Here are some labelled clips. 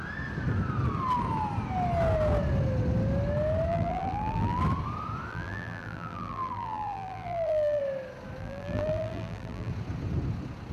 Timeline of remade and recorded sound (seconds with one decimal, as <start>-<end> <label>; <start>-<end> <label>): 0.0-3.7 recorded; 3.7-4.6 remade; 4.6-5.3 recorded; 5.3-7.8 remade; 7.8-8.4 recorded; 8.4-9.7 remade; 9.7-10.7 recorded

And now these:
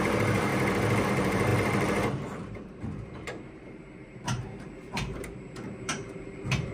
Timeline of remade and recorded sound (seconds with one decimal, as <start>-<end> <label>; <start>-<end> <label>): 0.0-0.5 remade; 0.5-1.1 recorded; 1.1-6.7 remade

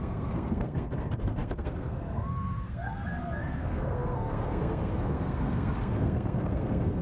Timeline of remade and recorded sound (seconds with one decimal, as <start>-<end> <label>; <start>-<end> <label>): 0.0-7.0 remade

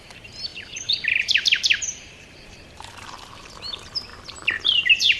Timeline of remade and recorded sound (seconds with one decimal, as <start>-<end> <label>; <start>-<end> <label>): 0.0-5.2 remade

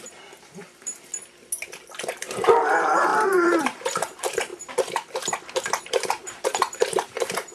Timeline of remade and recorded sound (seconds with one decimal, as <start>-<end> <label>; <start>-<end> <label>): 0.0-1.1 remade; 1.1-2.0 recorded; 2.0-3.1 remade; 3.1-3.6 recorded; 3.6-4.5 remade; 4.5-5.8 recorded; 5.8-7.5 remade

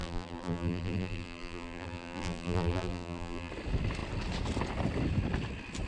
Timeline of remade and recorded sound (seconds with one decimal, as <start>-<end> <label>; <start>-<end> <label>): 0.0-3.5 remade; 3.5-5.9 recorded

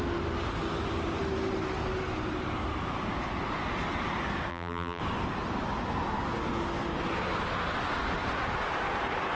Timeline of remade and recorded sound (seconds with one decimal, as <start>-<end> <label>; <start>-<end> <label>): 0.0-4.5 recorded; 4.5-5.0 remade; 5.0-9.3 recorded